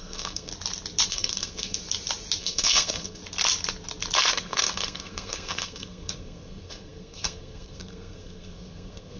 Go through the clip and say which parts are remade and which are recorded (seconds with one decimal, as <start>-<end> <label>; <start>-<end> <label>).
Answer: 0.0-0.5 remade; 0.5-1.1 recorded; 1.1-1.8 remade; 1.8-2.4 recorded; 2.4-3.2 remade; 3.2-4.3 recorded; 4.3-9.2 remade